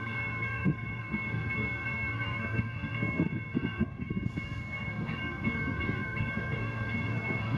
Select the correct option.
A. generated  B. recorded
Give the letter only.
A